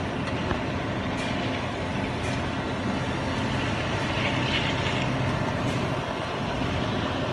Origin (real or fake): real